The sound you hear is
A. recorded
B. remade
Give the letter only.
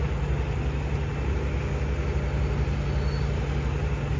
A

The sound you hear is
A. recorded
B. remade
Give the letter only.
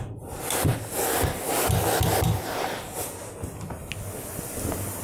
A